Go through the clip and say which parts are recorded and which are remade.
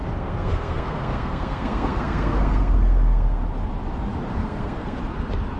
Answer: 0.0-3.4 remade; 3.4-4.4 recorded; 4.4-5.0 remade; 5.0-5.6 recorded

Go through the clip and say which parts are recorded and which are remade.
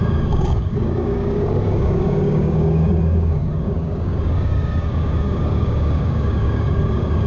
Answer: 0.0-7.3 remade